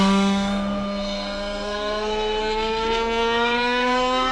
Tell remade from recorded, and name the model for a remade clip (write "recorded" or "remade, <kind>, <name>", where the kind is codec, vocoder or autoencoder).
remade, codec, SNAC